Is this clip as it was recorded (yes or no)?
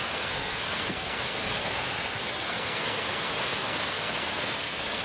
no